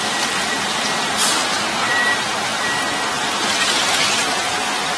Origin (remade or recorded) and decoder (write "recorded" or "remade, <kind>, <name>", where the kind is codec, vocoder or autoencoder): remade, vocoder, BigVGAN v2